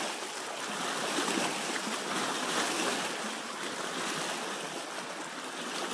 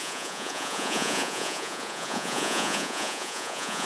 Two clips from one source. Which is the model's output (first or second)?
second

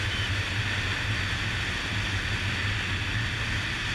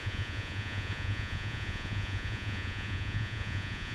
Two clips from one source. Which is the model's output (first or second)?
second